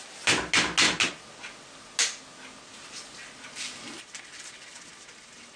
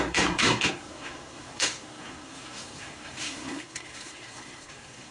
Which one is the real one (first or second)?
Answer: first